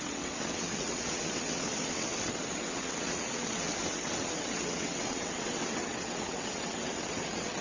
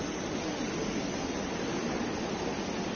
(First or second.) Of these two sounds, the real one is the second